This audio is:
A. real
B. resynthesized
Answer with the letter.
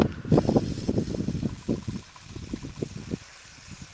A